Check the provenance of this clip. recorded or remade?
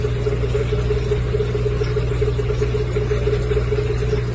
recorded